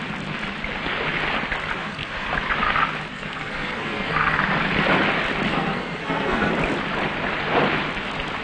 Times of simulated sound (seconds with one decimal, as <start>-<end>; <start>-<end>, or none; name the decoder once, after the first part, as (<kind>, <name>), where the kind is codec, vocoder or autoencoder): 1.8-2.3 (codec, SNAC); 3.1-4.4; 5.5-6.5